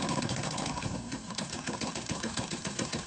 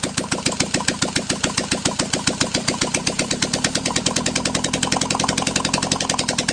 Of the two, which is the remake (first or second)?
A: first